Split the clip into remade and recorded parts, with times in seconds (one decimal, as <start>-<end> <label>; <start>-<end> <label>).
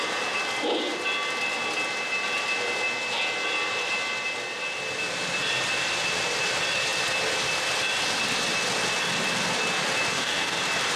0.0-10.1 recorded; 10.1-10.6 remade; 10.6-11.0 recorded